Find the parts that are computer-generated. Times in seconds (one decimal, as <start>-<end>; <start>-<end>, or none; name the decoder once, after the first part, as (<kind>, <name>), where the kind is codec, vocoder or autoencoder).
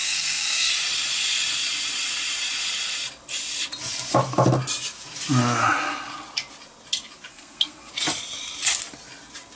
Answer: 0.0-0.7 (codec, SNAC); 7.3-7.9